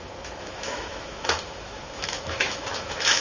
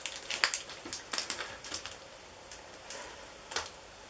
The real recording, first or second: second